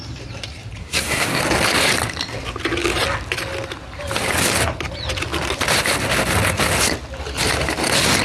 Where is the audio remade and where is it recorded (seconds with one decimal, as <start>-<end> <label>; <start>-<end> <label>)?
0.0-0.8 recorded; 0.8-1.4 remade; 1.4-8.2 recorded